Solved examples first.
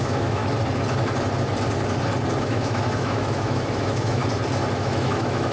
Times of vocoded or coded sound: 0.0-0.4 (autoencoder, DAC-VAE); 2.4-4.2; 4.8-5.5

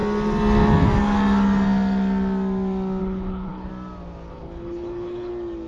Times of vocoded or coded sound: 3.0-3.7 (codec, HILCodec); 4.3-5.3

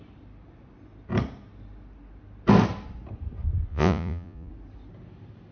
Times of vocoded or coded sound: 3.7-4.5 (vocoder, Vocos)

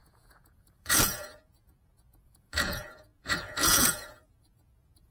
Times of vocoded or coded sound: 0.0-5.1 (vocoder, Vocos)

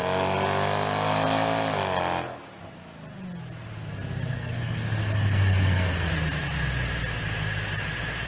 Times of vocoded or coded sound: 4.3-6.1 (codec, SNAC)